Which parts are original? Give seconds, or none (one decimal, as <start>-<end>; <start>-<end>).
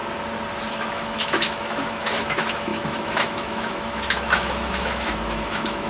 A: 0.0-0.7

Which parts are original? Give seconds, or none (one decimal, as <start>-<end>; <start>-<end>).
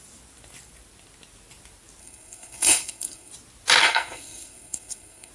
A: 0.0-2.0; 3.3-3.8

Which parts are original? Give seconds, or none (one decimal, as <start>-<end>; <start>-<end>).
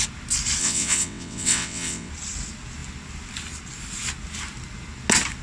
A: 0.0-0.6; 2.1-5.4